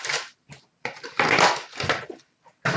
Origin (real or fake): real